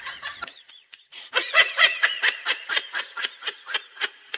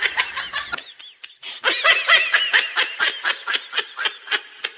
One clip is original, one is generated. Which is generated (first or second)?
first